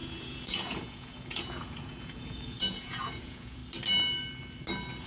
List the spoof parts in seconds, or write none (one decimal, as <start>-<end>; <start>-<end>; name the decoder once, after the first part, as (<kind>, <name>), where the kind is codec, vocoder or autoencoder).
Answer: 0.0-3.6 (vocoder, Vocos)